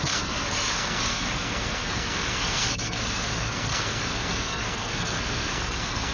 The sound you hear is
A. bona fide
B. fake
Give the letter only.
B